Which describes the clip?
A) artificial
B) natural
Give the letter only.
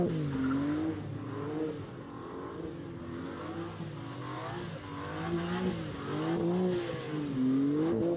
B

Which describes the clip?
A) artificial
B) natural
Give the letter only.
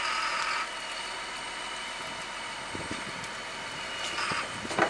B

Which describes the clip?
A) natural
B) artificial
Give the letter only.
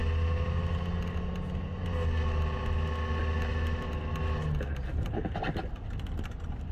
A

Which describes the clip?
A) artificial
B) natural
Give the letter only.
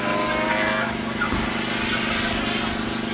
B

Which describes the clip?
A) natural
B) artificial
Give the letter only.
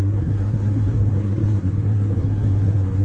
B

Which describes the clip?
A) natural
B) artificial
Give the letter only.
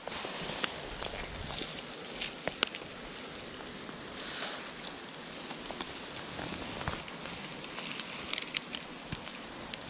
A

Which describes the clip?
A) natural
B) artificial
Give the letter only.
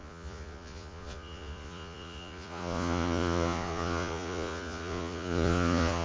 B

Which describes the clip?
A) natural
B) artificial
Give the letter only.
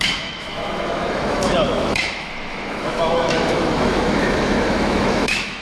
B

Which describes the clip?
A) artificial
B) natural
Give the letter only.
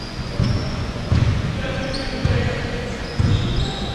A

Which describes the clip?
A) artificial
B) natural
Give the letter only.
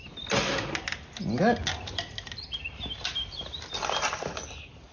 B